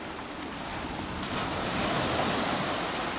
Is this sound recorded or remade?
recorded